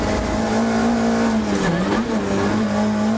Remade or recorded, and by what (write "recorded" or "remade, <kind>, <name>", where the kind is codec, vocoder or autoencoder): recorded